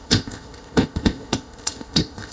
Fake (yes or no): yes